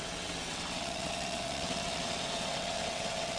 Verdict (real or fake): fake